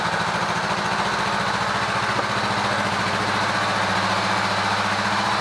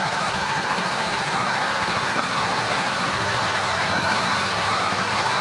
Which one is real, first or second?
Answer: first